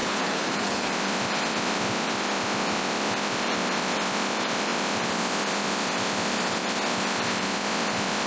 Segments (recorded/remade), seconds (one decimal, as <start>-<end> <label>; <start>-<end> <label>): 0.0-0.9 remade; 0.9-8.3 recorded